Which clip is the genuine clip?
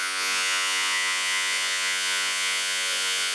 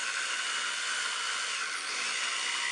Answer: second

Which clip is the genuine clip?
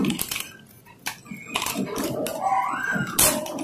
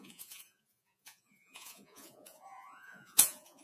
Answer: first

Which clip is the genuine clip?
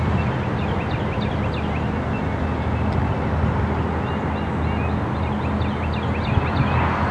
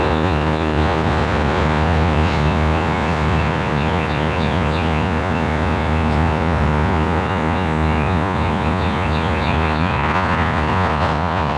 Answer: first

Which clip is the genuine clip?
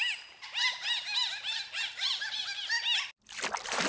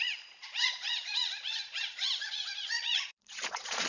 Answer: first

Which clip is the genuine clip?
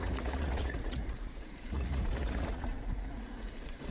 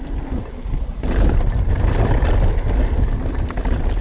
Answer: second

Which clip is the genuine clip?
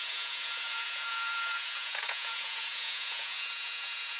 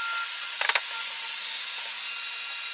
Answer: second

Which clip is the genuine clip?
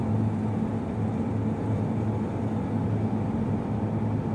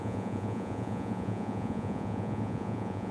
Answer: first